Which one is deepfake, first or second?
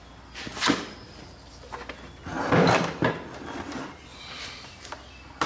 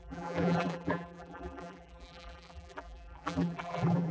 second